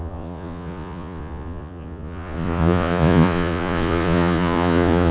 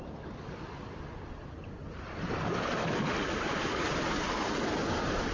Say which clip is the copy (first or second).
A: first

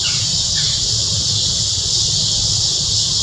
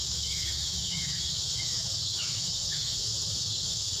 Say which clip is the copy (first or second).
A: second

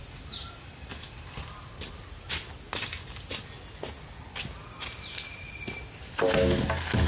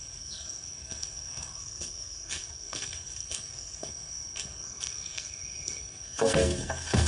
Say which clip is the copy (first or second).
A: second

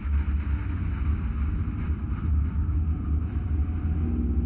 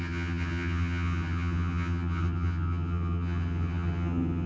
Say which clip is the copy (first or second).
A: second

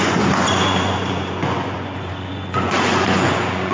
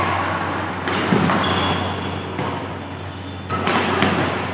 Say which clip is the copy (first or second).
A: first